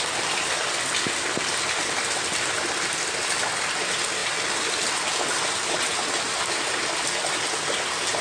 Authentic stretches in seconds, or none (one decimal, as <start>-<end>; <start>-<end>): 0.0-8.2